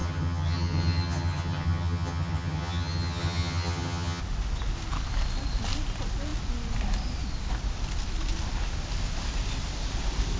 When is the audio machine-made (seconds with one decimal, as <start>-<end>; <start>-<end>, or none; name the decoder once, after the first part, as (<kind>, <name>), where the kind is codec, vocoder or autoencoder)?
0.0-4.2 (vocoder, HiFi-GAN)